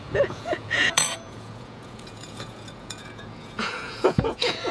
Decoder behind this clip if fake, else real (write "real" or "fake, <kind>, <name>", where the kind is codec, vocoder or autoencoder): fake, vocoder, Vocos